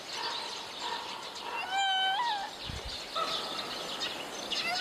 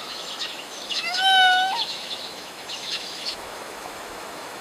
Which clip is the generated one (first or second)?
second